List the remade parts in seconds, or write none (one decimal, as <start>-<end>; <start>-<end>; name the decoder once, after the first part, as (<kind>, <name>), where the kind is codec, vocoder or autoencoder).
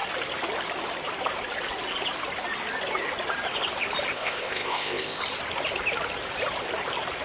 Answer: 4.1-5.2 (codec, ZipCodec)